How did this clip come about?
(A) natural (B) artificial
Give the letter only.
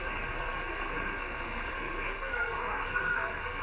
B